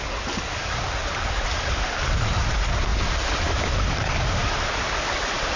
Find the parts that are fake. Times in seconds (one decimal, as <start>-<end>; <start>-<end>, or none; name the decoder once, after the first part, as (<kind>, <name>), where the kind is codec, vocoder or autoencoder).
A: none